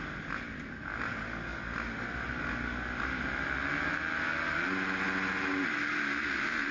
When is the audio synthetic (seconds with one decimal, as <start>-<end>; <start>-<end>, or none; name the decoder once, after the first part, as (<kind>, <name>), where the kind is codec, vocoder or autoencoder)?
none